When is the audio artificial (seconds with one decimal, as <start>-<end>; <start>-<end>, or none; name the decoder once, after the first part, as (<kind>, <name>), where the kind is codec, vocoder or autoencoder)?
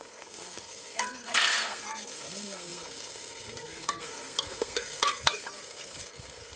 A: 0.0-6.6 (codec, SNAC)